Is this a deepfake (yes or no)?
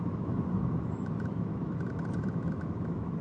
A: yes